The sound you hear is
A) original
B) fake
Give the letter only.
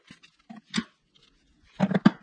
A